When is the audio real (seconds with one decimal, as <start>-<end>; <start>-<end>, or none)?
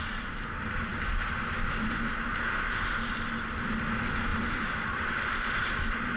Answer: 0.0-4.3; 5.7-6.2